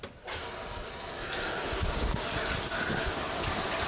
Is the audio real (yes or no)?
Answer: yes